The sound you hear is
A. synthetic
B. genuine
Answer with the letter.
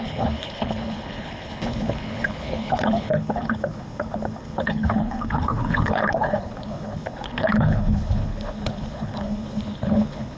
A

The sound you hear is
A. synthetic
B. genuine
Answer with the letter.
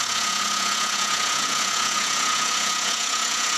A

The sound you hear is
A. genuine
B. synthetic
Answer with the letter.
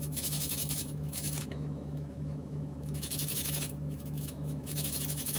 B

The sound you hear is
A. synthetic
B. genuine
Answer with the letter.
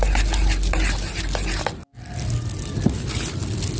B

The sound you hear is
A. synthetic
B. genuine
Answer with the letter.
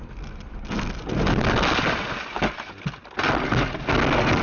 B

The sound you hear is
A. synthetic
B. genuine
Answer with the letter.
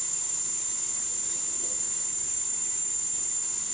A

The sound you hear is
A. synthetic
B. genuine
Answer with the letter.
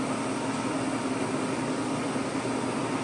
B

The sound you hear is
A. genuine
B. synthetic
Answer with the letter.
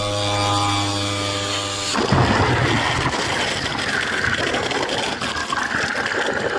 A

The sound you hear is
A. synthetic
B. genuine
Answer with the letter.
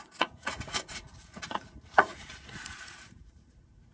A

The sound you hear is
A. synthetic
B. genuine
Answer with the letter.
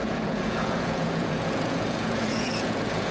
A